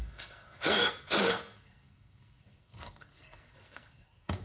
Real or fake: fake